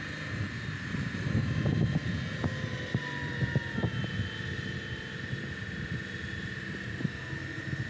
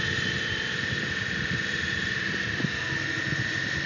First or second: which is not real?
second